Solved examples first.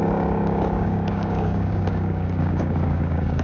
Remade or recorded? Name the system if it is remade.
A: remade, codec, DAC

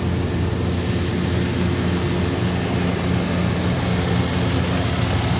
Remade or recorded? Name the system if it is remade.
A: recorded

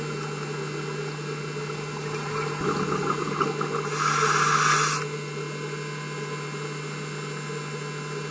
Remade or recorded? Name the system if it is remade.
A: recorded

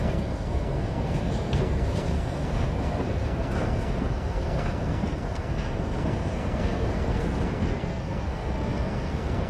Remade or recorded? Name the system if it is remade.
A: remade, codec, SNAC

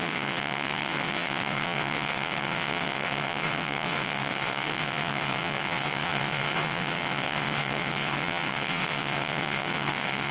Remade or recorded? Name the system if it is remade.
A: remade, vocoder, WaveNeXt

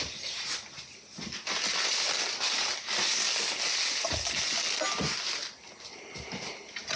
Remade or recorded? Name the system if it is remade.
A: recorded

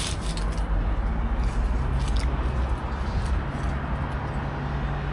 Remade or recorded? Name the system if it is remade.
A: recorded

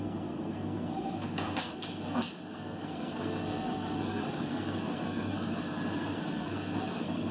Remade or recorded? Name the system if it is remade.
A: remade, codec, SNAC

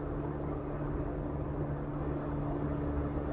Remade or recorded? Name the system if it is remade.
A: recorded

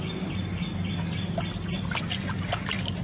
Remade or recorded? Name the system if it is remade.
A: recorded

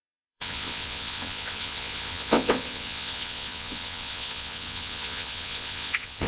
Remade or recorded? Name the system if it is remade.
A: remade, vocoder, WaveNeXt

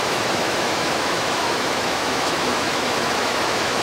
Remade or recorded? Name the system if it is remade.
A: remade, autoencoder, DAC-VAE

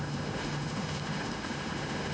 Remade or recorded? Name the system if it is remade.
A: remade, autoencoder, DAC-VAE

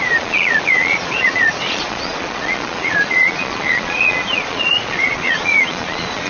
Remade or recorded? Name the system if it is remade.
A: remade, vocoder, Vocos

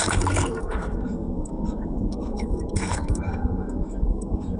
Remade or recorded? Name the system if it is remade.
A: remade, codec, SNAC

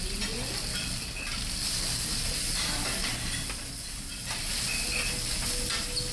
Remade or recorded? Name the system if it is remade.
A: recorded